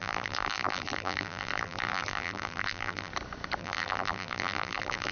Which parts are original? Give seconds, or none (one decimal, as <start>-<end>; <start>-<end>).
3.1-3.6